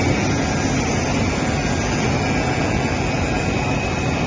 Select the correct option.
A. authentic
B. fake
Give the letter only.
A